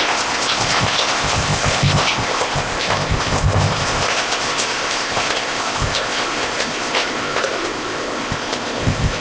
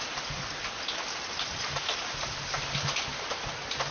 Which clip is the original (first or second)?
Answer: second